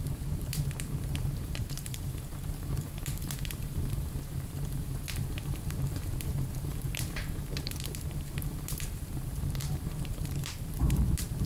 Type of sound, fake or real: fake